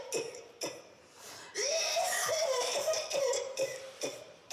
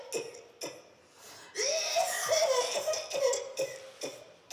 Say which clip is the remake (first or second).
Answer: first